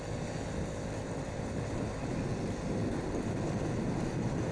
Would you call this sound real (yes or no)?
yes